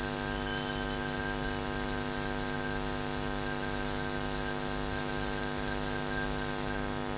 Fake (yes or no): no